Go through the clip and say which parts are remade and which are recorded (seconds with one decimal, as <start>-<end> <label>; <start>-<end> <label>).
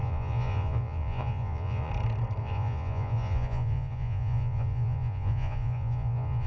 0.0-1.9 remade; 1.9-2.4 recorded; 2.4-6.5 remade